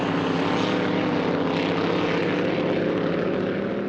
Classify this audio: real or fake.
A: real